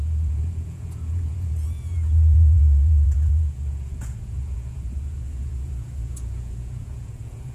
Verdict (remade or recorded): remade